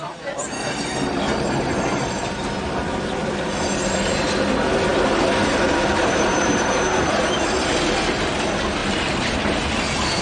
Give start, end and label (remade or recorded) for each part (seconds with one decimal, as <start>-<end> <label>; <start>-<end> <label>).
0.0-4.9 recorded; 4.9-7.2 remade; 7.2-8.8 recorded; 8.8-9.3 remade; 9.3-10.2 recorded